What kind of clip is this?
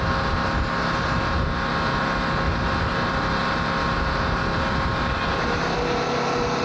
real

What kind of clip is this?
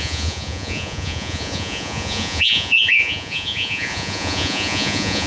fake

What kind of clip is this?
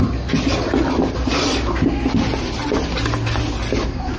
real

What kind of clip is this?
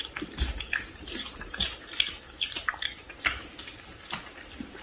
real